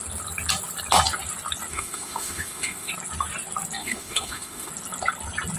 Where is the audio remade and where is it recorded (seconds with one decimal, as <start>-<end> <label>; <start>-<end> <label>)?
0.0-1.7 recorded; 1.7-2.9 remade; 2.9-3.8 recorded; 3.8-4.7 remade; 4.7-5.6 recorded